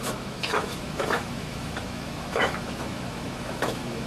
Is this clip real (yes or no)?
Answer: no